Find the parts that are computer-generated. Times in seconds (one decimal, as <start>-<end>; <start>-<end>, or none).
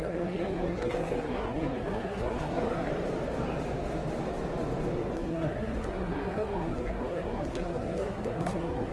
0.0-2.9; 5.1-8.9